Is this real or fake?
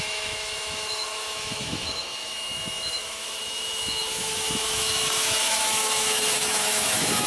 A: fake